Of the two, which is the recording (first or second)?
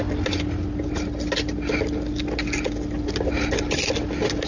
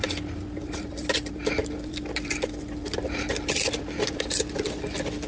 first